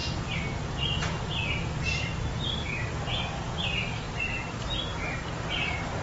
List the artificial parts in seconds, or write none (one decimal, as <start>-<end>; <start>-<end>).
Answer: none